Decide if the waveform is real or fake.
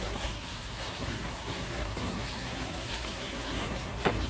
fake